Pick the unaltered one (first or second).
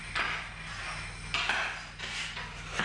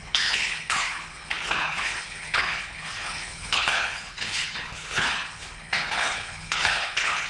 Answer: first